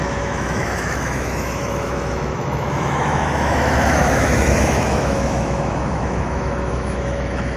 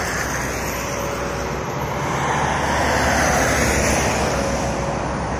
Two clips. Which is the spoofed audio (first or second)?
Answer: first